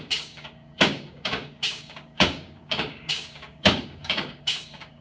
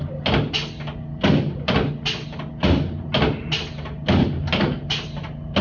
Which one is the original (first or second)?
second